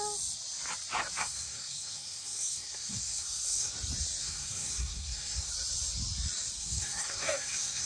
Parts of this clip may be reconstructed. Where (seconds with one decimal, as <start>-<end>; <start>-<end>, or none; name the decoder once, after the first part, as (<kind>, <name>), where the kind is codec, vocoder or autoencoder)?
1.2-3.7 (codec, SNAC); 4.2-5.5; 6.6-7.9